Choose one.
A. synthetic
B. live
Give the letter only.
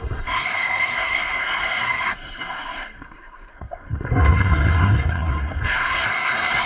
A